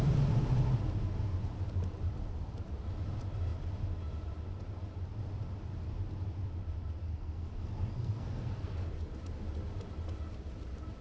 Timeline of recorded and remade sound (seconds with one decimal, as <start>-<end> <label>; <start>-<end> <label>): 0.0-7.0 recorded; 7.0-8.9 remade; 8.9-11.0 recorded